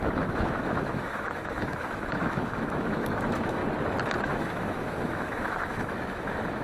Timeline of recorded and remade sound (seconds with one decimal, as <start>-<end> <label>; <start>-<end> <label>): 0.0-3.6 remade; 3.6-4.2 recorded; 4.2-6.6 remade